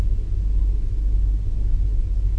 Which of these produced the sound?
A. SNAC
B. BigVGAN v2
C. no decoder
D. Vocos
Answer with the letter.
C